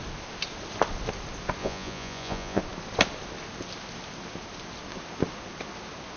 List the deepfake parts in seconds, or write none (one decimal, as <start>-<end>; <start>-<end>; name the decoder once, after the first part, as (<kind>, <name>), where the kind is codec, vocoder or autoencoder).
1.6-2.6 (vocoder, Vocos)